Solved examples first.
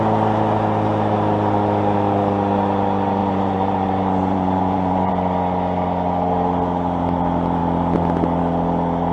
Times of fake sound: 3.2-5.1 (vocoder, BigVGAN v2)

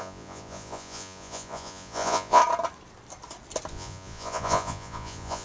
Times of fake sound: 0.0-2.4 (vocoder, Vocos); 3.7-5.4

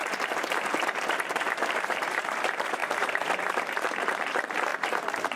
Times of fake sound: 0.0-5.4 (vocoder, BigVGAN v2)

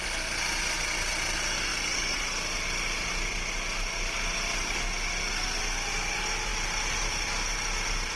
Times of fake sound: none

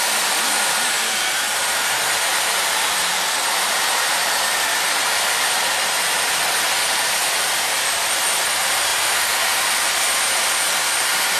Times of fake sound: 7.2-8.5 (vocoder, BigVGAN v2)

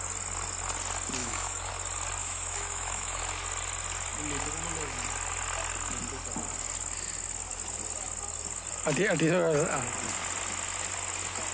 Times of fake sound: 1.2-1.7 (autoencoder, DAC-VAE); 2.2-3.2

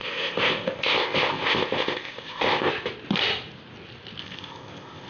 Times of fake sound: 0.0-2.7 (codec, ZipCodec); 4.2-5.1